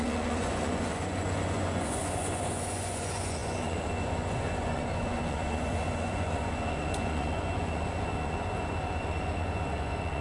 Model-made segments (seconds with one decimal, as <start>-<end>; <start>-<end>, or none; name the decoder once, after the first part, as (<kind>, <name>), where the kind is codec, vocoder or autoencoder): 0.0-10.2 (vocoder, Vocos)